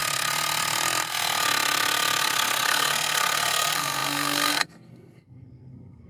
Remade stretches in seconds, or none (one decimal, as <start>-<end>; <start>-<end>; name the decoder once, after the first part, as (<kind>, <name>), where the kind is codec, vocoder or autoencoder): 2.2-6.1 (codec, SNAC)